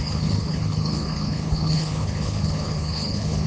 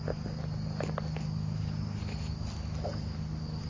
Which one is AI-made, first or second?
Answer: first